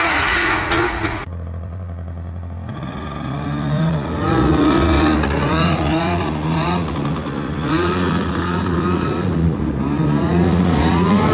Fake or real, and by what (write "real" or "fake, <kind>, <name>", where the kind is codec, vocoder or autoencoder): fake, vocoder, Vocos